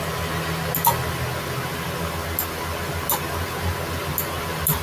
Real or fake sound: real